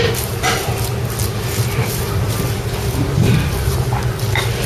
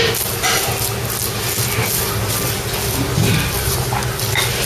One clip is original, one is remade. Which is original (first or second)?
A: second